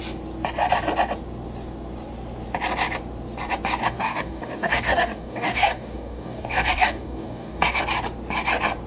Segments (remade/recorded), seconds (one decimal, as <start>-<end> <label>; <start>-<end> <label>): 0.0-3.8 recorded; 3.8-7.8 remade; 7.8-8.9 recorded